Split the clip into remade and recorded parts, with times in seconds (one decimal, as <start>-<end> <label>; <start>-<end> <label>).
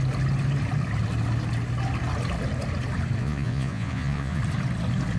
0.0-3.2 recorded; 3.2-4.4 remade; 4.4-5.2 recorded